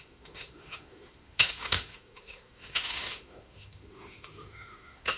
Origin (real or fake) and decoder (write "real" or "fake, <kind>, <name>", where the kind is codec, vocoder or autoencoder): fake, autoencoder, DAC-VAE